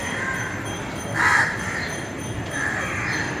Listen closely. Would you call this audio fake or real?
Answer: real